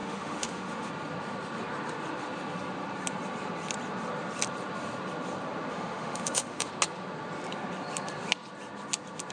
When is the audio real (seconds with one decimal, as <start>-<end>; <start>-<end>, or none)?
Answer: 0.9-5.7; 6.7-9.3